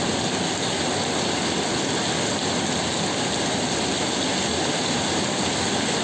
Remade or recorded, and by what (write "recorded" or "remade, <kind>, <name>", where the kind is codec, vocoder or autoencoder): recorded